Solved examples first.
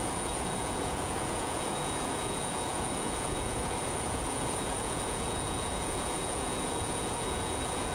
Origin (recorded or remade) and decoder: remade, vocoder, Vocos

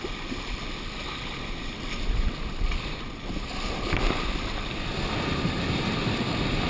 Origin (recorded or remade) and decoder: recorded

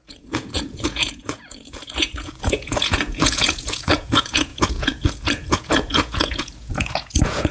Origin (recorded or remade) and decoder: remade, vocoder, Vocos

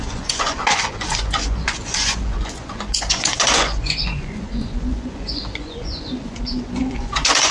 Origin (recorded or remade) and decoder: remade, vocoder, Vocos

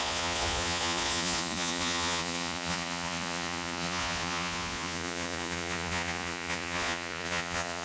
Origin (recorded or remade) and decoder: remade, vocoder, Vocos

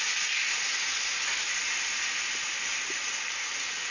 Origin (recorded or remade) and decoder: recorded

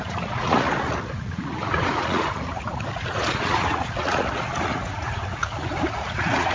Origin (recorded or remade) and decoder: remade, vocoder, Vocos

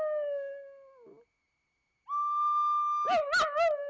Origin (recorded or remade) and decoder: recorded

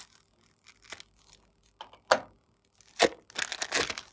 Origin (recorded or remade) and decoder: recorded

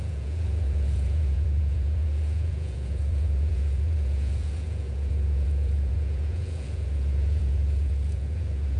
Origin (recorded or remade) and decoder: remade, vocoder, Vocos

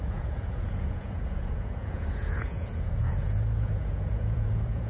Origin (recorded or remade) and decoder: remade, vocoder, Vocos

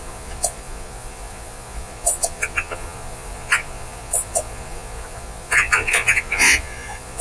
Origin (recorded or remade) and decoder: remade, vocoder, Vocos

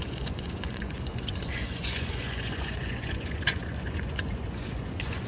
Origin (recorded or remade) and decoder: remade, vocoder, Vocos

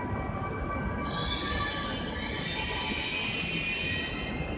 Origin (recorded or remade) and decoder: recorded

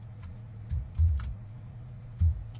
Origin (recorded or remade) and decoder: remade, vocoder, Vocos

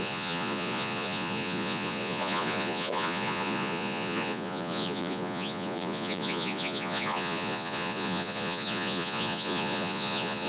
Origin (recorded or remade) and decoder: remade, vocoder, Vocos